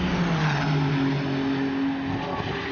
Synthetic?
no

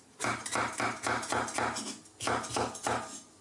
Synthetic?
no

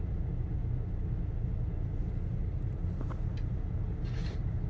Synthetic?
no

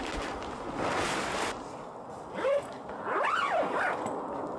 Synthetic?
no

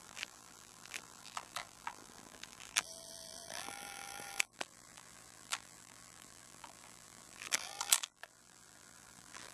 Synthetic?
yes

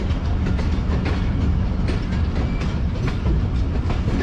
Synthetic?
no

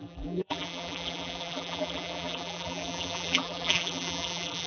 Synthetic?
yes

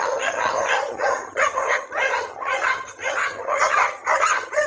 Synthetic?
yes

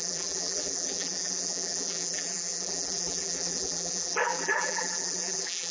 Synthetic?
yes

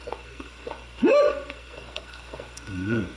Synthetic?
yes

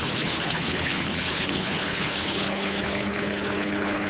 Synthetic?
yes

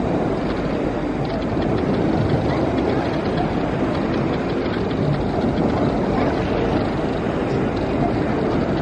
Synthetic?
no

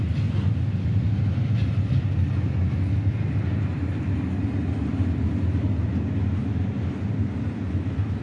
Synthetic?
no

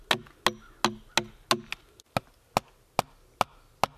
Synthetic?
no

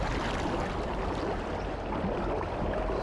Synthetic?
no